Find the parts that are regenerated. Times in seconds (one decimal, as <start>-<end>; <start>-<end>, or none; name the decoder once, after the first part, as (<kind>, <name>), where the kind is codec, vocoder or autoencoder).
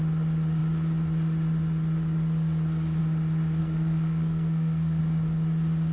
3.6-5.0 (codec, SNAC)